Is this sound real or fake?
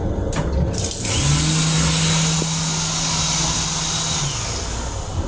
real